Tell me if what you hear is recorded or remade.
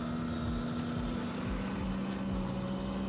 recorded